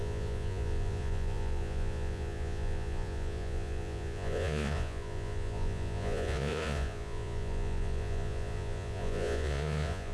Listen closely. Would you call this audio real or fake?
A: fake